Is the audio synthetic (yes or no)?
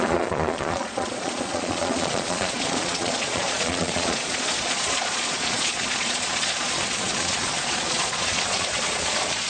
yes